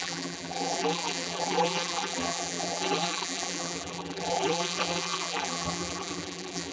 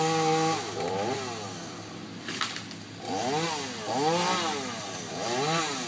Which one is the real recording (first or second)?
second